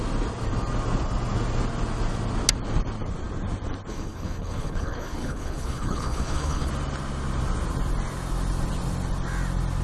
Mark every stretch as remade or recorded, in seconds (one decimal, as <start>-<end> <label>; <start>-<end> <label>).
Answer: 0.0-3.9 recorded; 3.9-6.7 remade; 6.7-9.8 recorded